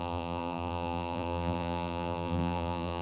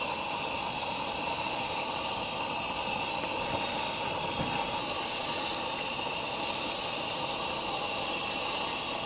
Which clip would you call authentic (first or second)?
second